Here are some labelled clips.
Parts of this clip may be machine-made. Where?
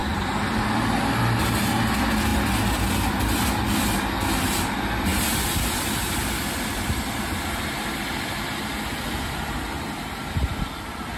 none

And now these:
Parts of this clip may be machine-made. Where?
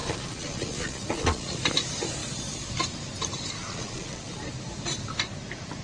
0.0-1.6 (vocoder, Vocos); 3.6-4.4